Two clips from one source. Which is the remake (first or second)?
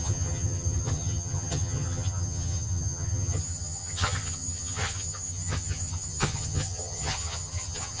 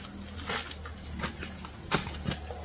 first